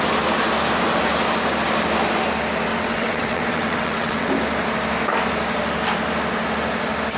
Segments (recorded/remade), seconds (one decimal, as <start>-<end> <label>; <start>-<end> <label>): 0.0-2.7 recorded; 2.7-4.3 remade; 4.3-7.2 recorded